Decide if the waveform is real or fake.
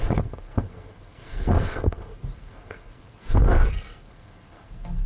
fake